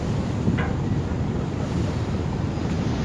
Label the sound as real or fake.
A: real